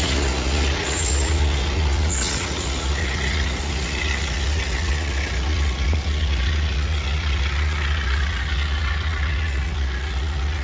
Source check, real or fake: fake